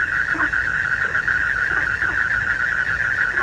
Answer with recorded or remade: recorded